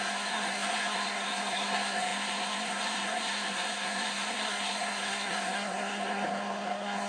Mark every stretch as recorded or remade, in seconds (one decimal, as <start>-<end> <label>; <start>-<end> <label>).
0.0-7.1 remade